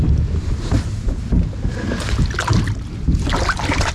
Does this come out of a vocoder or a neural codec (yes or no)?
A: yes